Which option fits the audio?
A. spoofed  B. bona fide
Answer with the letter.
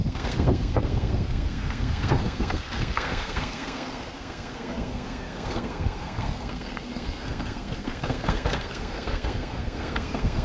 A